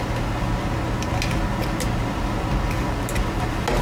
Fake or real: real